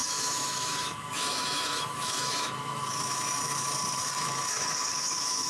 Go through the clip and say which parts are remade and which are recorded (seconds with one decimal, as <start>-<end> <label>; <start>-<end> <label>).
0.0-5.5 remade